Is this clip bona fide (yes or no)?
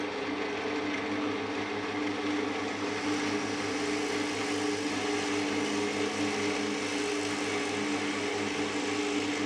yes